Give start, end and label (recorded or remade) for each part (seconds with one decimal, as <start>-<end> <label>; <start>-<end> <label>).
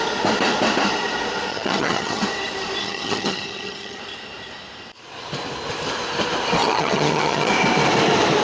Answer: 0.0-1.5 recorded; 1.5-2.2 remade; 2.2-2.8 recorded; 2.8-4.0 remade; 4.0-6.6 recorded; 6.6-7.5 remade; 7.5-8.4 recorded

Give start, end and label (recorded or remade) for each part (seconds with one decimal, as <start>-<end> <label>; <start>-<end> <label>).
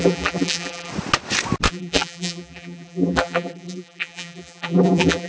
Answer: 0.0-0.9 remade; 0.9-1.7 recorded; 1.7-5.3 remade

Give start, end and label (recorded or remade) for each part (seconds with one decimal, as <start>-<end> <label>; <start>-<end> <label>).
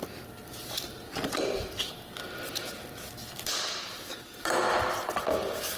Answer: 0.0-5.8 recorded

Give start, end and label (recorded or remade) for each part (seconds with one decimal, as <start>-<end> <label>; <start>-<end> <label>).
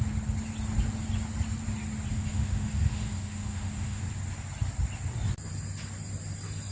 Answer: 0.0-2.1 recorded; 2.1-4.0 remade; 4.0-6.7 recorded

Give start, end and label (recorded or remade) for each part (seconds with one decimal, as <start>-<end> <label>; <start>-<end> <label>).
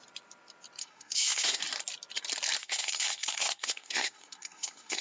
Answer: 0.0-0.8 recorded; 0.8-1.6 remade; 1.6-2.6 recorded; 2.6-5.0 remade